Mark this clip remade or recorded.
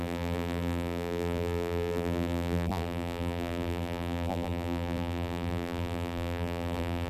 remade